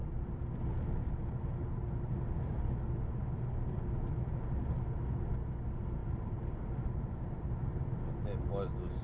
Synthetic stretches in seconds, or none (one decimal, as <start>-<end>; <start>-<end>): 6.0-8.0